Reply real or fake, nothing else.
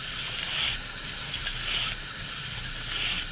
real